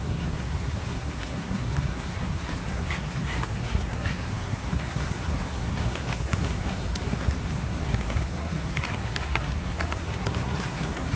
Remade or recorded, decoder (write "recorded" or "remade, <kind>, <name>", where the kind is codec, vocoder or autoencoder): remade, codec, SNAC